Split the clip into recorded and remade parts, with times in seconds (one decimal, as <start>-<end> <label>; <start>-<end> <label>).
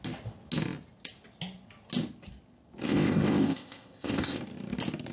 0.0-2.9 recorded; 2.9-4.4 remade; 4.4-5.1 recorded